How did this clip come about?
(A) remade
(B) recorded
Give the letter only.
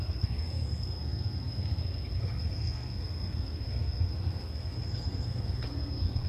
A